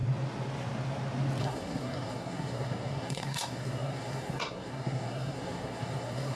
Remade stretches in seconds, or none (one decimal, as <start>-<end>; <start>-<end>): 1.4-6.3